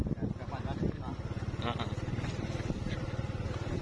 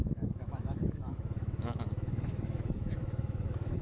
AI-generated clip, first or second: second